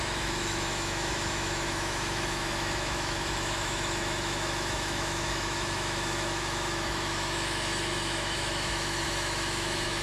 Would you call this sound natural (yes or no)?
no